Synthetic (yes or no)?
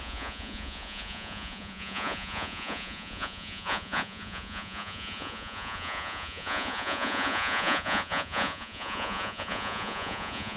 yes